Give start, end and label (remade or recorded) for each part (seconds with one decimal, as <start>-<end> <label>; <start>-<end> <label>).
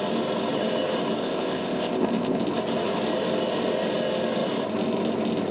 0.0-1.2 recorded; 1.2-2.4 remade; 2.4-5.5 recorded